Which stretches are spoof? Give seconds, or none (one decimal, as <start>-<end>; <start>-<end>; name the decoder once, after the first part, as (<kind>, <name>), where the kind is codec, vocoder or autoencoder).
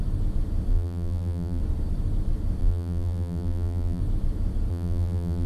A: 0.7-1.6 (vocoder, BigVGAN v2); 2.6-4.0; 4.7-5.5